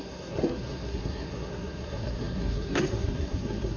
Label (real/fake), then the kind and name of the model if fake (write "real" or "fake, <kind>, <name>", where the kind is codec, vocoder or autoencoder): fake, codec, SNAC